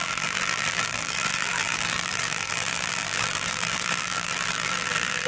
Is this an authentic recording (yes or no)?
no